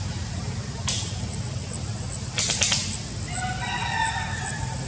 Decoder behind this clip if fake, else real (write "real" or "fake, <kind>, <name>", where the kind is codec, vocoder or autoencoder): real